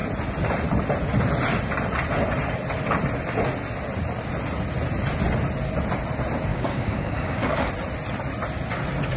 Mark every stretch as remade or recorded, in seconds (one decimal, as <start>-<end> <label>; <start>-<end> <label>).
0.0-6.5 recorded; 6.5-7.7 remade; 7.7-9.2 recorded